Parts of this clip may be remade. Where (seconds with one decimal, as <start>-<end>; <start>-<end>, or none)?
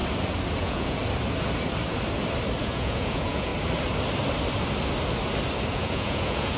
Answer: 0.6-1.0; 2.6-3.5; 5.7-6.6